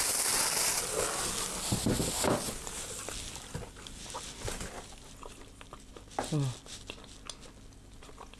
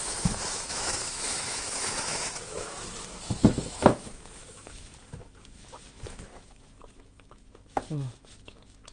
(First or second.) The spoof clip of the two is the second